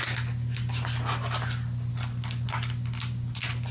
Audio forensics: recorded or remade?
recorded